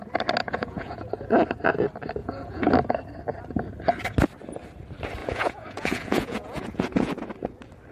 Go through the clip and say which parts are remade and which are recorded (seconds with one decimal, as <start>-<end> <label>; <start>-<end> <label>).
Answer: 0.0-0.4 recorded; 0.4-1.1 remade; 1.1-2.2 recorded; 2.2-2.7 remade; 2.7-5.2 recorded; 5.2-7.1 remade; 7.1-7.9 recorded